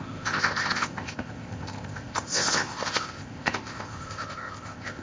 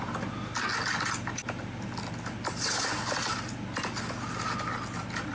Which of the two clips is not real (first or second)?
first